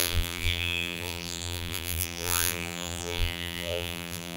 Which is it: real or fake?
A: fake